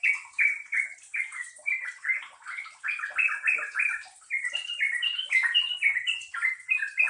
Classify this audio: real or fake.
fake